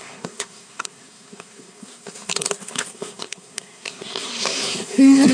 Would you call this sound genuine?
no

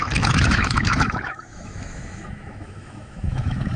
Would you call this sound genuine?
no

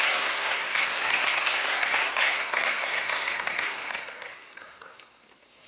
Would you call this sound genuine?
no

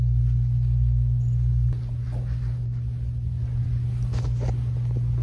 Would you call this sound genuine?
yes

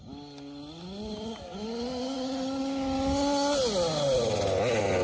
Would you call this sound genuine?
yes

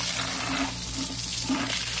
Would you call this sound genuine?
yes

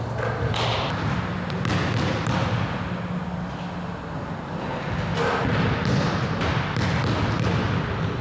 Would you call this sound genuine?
yes